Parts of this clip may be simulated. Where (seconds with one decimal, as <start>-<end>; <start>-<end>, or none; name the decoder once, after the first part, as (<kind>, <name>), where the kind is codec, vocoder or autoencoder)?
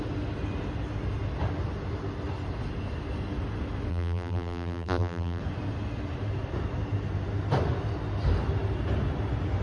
3.9-5.4 (vocoder, BigVGAN v2)